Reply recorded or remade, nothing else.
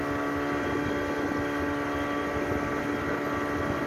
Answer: recorded